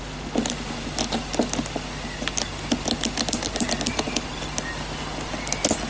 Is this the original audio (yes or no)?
yes